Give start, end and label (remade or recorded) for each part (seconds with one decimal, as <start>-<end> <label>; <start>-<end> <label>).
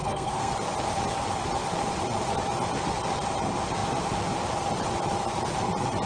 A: 0.0-0.5 remade; 0.5-6.1 recorded